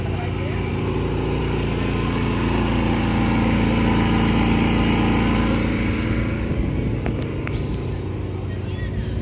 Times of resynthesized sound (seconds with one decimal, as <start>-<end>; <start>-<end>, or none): none